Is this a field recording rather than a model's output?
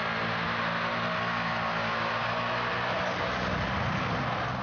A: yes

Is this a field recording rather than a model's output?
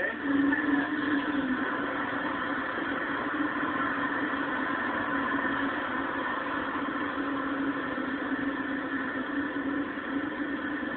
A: yes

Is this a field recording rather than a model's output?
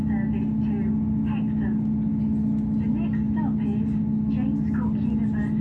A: yes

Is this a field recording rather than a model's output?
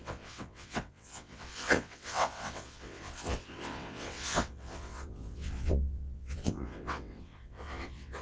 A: no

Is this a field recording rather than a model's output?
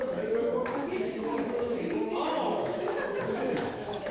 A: no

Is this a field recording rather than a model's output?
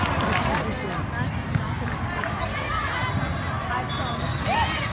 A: yes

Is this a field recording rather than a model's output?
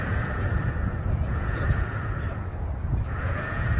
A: no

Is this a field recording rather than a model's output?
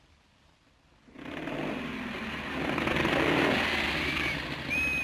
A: yes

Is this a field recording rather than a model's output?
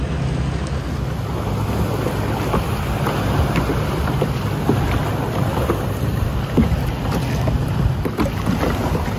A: yes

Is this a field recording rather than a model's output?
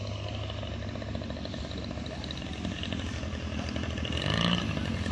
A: yes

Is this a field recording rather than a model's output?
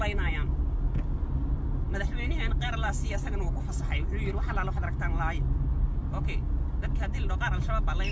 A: yes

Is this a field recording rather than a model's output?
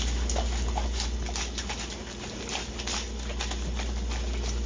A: yes